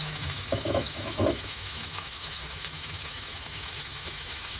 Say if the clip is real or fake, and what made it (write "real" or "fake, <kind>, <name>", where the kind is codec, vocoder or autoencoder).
fake, autoencoder, DAC-VAE